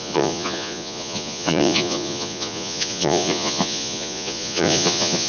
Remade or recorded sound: remade